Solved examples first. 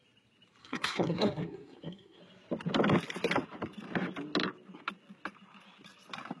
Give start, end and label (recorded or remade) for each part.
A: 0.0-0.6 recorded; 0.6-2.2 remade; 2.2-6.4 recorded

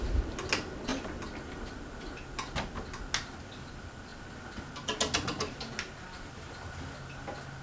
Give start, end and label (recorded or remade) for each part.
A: 0.0-7.6 recorded

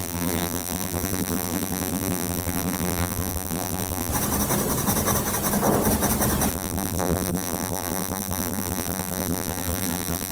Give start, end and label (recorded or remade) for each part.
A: 0.0-4.1 remade; 4.1-6.5 recorded; 6.5-10.3 remade